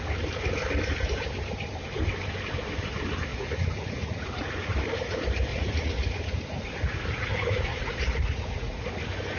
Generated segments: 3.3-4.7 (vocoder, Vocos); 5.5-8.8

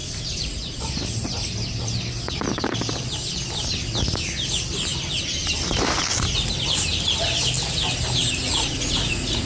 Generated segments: 0.0-0.8 (vocoder, Vocos); 8.5-9.5

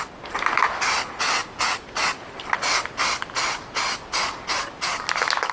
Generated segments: none

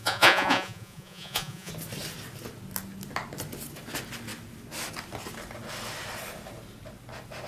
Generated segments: 0.0-1.7 (vocoder, Vocos)

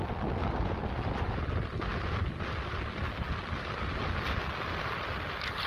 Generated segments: none

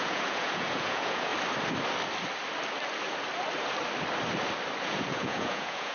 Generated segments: 0.0-1.3 (vocoder, Vocos); 4.8-5.9